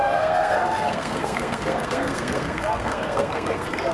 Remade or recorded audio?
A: remade